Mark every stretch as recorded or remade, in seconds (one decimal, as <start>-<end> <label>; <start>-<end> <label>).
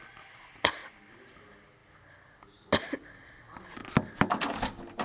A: 0.0-5.0 recorded